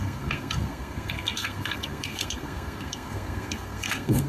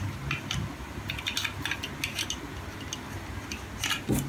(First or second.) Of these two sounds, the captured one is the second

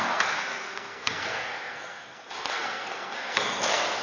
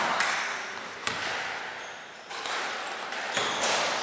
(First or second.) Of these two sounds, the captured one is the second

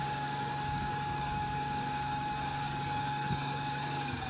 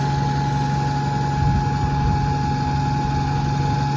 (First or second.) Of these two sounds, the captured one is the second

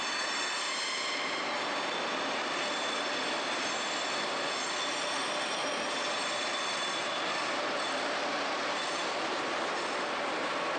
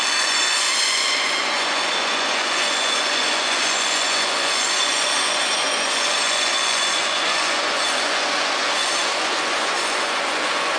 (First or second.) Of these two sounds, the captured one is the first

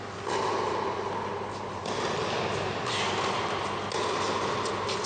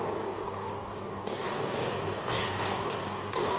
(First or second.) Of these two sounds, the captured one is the first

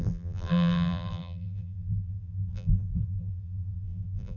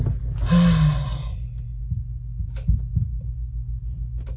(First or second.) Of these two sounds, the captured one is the second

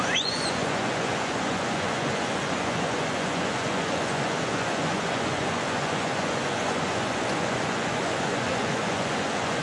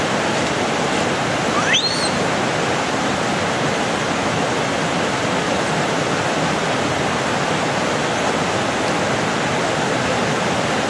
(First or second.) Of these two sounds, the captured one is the second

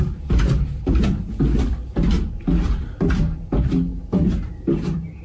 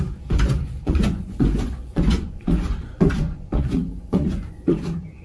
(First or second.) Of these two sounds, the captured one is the first